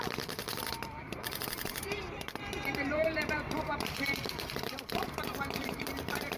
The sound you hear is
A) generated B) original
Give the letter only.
A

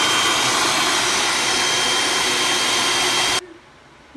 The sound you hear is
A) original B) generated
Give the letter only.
A